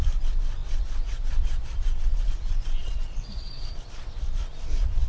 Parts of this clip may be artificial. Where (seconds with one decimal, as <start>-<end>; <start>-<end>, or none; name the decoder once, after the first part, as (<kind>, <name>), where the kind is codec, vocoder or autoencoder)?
0.6-3.7 (vocoder, Vocos)